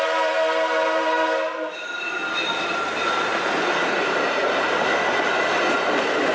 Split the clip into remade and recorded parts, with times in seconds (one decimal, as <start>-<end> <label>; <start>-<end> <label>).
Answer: 0.0-2.2 remade; 2.2-2.7 recorded; 2.7-3.3 remade; 3.3-4.0 recorded; 4.0-4.4 remade; 4.4-6.3 recorded